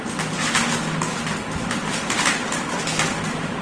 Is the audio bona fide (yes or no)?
yes